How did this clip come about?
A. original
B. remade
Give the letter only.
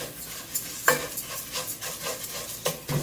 A